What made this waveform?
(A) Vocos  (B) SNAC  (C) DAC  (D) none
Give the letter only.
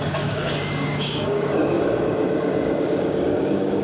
C